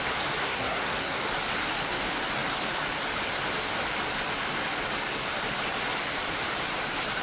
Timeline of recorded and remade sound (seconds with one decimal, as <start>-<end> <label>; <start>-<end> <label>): 0.0-0.4 recorded; 0.4-1.2 remade; 1.2-7.2 recorded